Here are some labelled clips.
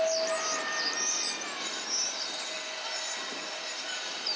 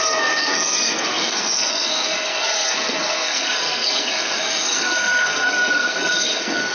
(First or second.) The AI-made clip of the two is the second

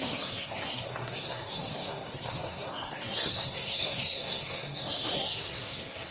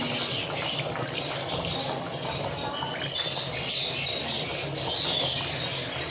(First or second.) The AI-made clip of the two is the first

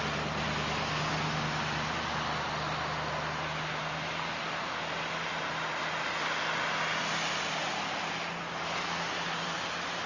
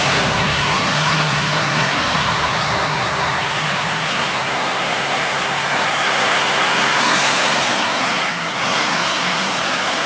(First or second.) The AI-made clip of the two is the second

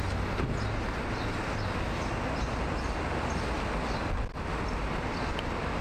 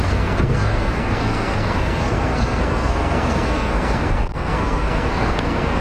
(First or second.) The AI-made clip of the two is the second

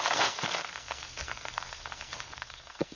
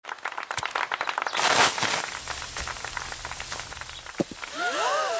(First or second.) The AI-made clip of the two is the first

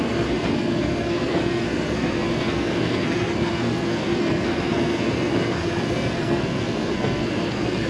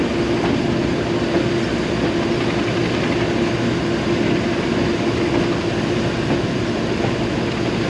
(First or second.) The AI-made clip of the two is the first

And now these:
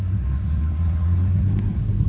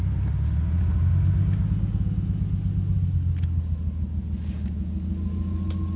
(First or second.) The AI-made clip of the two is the first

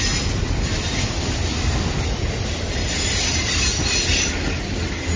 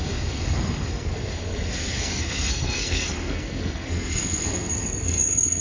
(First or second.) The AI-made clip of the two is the second